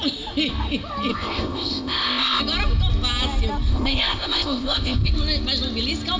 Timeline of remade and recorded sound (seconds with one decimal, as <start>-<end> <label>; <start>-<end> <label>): 0.0-1.1 recorded; 1.1-2.4 remade; 2.4-3.7 recorded; 3.7-5.1 remade; 5.1-6.2 recorded